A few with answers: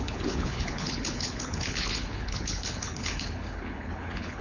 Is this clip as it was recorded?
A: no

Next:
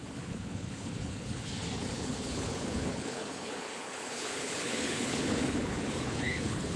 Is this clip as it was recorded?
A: no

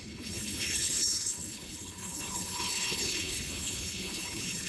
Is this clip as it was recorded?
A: no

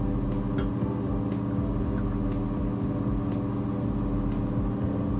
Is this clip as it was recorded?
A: yes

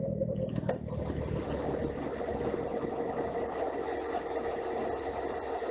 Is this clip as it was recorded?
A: yes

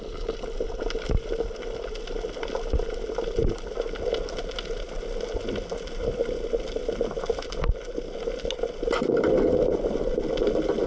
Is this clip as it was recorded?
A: yes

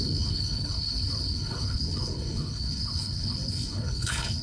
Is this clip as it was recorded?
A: no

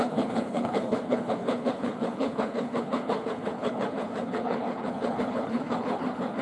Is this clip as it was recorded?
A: no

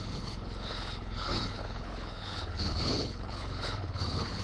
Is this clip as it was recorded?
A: no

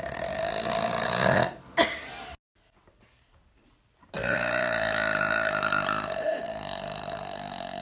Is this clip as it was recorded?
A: yes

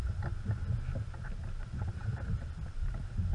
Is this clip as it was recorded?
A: yes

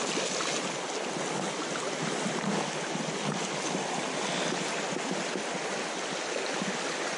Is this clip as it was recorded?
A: yes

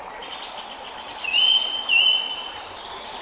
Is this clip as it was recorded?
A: yes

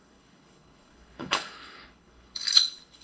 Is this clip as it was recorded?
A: no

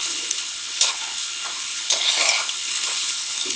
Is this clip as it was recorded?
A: no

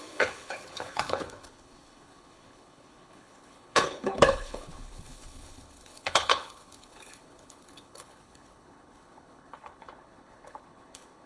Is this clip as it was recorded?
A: no